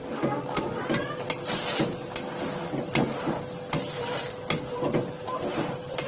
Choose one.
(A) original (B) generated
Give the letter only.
A